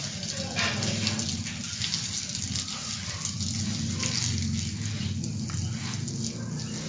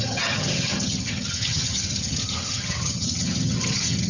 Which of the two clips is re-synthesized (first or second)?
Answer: second